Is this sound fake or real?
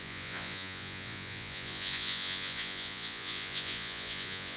fake